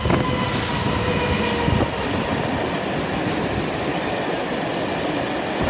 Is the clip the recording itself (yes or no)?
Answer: yes